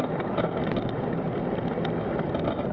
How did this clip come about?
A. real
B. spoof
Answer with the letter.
A